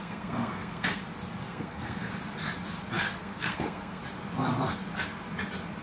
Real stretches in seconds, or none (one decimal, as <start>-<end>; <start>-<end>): 1.0-1.4; 2.1-3.2; 4.0-5.8